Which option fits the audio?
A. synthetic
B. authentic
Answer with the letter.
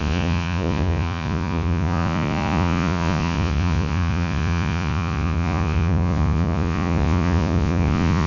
A